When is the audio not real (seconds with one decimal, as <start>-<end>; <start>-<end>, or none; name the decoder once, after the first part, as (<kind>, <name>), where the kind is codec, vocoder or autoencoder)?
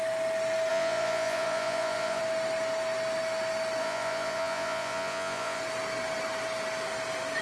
0.7-2.2 (vocoder, Vocos); 3.8-5.6